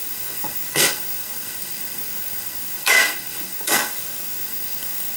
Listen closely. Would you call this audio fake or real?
fake